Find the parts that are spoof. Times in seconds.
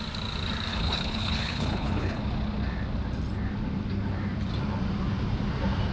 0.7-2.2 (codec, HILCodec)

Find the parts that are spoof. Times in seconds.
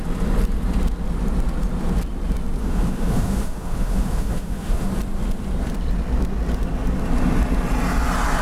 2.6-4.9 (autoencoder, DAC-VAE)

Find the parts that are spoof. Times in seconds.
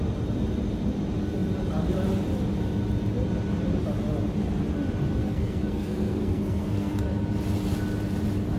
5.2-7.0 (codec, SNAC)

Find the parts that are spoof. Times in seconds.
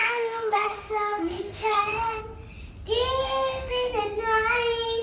0.0-2.2 (autoencoder, DAC-VAE); 3.2-3.9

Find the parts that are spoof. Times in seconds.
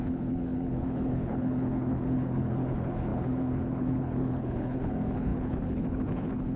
0.0-6.6 (codec, HILCodec)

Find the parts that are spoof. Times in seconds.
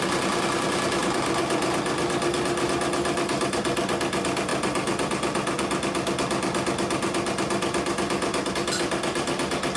none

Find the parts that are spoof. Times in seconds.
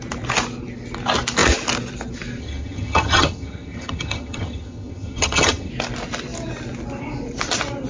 2.4-5.7 (vocoder, HiFi-GAN)